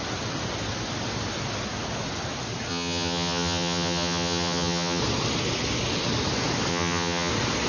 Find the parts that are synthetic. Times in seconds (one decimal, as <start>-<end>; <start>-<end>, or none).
2.7-5.0; 6.7-7.3